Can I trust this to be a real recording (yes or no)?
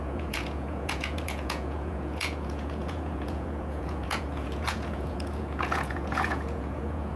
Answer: no